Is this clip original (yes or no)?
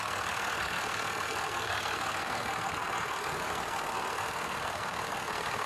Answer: no